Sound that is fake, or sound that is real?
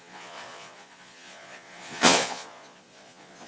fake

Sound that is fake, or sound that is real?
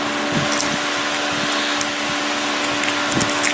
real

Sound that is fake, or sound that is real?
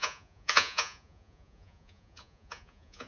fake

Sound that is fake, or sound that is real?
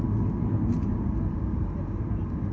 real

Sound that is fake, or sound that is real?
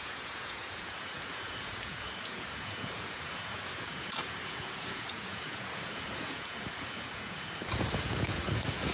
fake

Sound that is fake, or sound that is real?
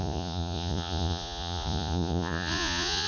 fake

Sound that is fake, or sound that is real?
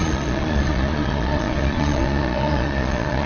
fake